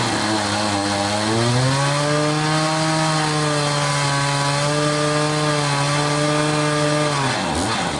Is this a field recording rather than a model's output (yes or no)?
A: yes